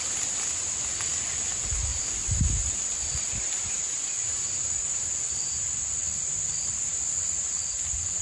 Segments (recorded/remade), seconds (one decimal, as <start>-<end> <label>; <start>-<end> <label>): 0.0-8.2 recorded